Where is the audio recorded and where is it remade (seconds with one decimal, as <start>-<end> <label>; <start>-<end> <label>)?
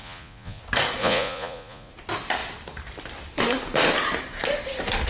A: 0.0-0.6 remade; 0.6-1.0 recorded; 1.0-1.9 remade; 1.9-5.1 recorded